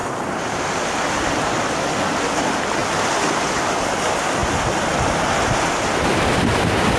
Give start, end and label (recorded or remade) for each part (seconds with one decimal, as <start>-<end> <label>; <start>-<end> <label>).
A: 0.0-0.9 remade; 0.9-2.8 recorded; 2.8-3.7 remade; 3.7-4.4 recorded; 4.4-5.2 remade; 5.2-7.0 recorded